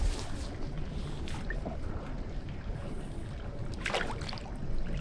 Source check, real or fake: real